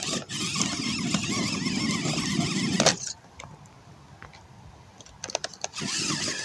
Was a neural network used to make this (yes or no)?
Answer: no